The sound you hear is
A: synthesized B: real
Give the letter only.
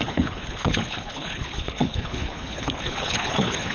A